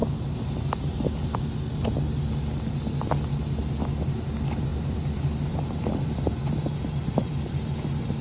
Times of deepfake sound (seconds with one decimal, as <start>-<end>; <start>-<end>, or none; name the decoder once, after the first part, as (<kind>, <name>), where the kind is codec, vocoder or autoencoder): 4.7-7.6 (vocoder, BigVGAN v2)